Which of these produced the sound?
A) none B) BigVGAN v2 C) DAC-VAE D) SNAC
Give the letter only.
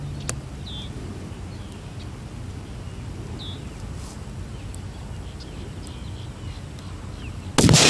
A